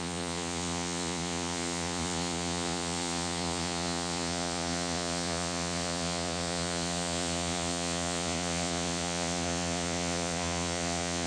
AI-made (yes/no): yes